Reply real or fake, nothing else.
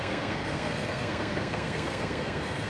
fake